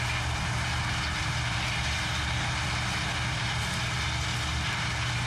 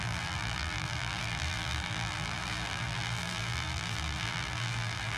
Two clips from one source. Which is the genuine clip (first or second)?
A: first